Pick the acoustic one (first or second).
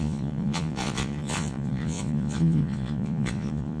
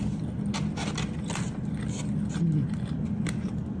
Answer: second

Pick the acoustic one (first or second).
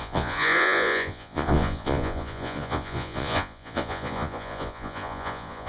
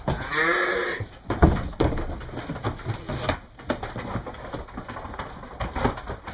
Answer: second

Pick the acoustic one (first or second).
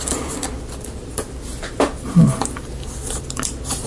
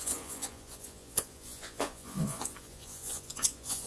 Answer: first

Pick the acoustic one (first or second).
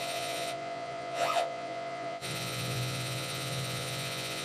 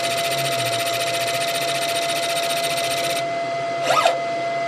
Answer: second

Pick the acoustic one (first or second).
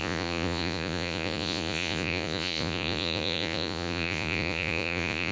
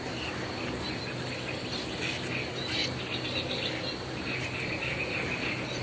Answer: second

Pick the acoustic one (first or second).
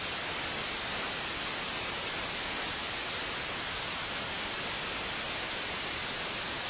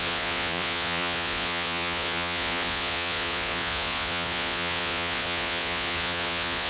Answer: first